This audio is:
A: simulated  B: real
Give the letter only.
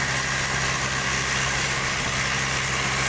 B